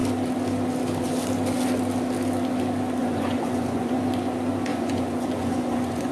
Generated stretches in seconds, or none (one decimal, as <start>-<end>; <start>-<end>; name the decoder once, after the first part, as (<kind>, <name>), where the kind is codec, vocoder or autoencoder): 3.0-4.0 (vocoder, Vocos); 4.7-6.1